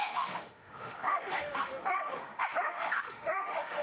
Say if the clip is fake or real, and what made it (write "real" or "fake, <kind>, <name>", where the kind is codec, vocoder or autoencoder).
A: fake, autoencoder, DAC-VAE